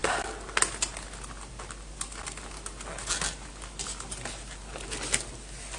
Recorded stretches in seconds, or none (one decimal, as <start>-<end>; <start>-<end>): 0.0-5.8